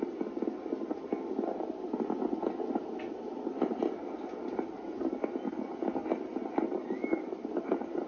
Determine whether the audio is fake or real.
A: real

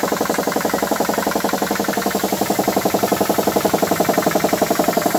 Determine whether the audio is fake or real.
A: real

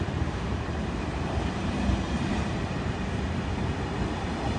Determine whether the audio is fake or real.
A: fake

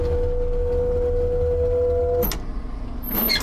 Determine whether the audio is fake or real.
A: real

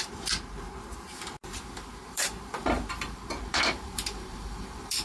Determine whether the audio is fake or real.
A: fake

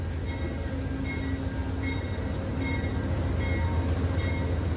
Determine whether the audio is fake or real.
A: real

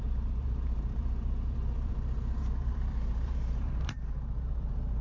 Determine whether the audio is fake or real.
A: fake